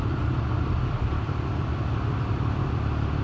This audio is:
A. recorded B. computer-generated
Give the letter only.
A